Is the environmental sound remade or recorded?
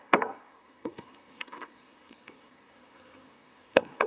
remade